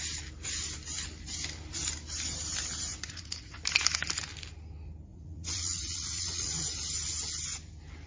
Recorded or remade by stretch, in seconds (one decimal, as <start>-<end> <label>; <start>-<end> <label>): 0.0-2.9 recorded; 2.9-3.6 remade; 3.6-5.1 recorded; 5.1-6.5 remade; 6.5-8.1 recorded